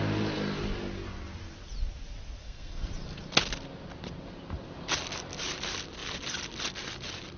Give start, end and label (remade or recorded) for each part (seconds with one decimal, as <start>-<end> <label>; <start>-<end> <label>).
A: 0.0-2.4 recorded; 2.4-2.9 remade; 2.9-7.4 recorded